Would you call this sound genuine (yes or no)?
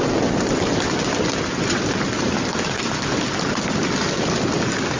yes